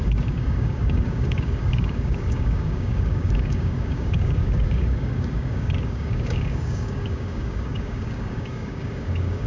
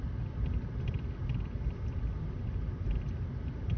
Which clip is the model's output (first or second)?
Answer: first